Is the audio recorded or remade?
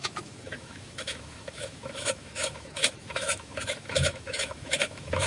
remade